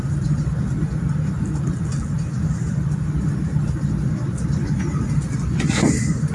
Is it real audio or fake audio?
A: real